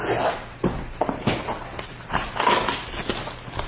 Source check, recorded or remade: recorded